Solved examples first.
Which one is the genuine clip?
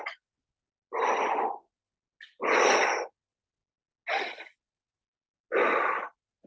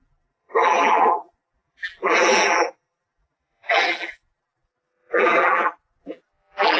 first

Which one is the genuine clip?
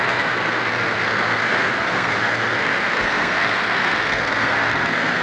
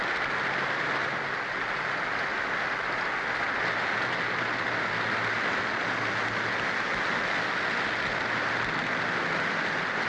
second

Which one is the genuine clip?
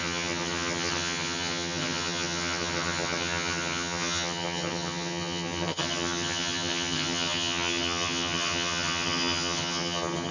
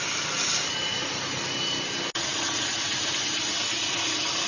second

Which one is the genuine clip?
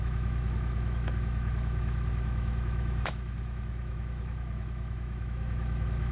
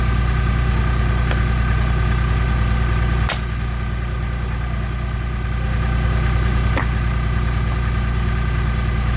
second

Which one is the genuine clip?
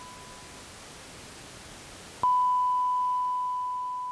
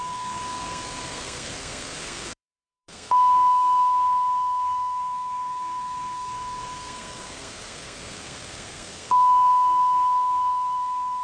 first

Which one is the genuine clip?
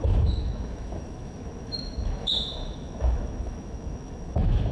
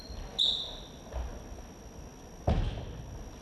second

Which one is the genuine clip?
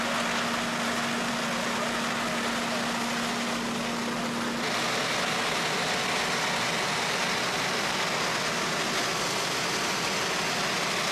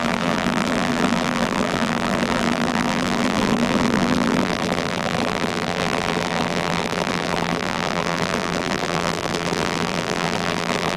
first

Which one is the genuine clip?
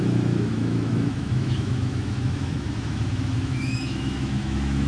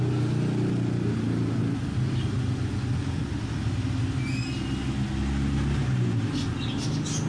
second